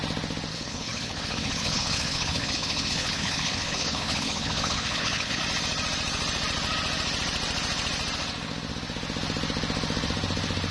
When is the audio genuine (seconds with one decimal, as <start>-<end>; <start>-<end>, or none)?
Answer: 0.0-0.5; 5.4-10.7